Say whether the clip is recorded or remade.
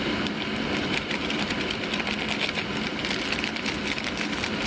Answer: recorded